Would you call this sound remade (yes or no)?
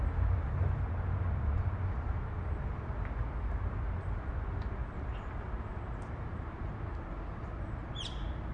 no